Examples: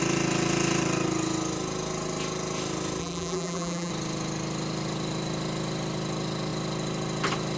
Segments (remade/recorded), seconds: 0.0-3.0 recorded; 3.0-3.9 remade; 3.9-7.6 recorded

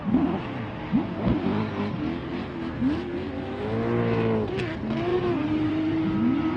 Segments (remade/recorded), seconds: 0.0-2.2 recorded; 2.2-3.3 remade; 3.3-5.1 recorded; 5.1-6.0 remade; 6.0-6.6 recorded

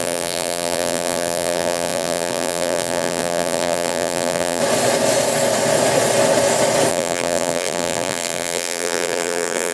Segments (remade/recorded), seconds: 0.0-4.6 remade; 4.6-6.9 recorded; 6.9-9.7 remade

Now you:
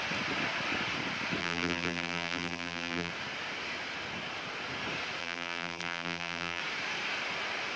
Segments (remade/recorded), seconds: 0.0-1.4 recorded; 1.4-3.1 remade; 3.1-5.2 recorded; 5.2-6.6 remade; 6.6-7.8 recorded

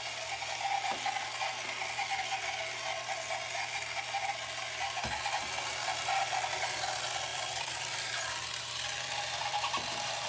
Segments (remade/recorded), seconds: 0.0-7.3 recorded; 7.3-10.3 remade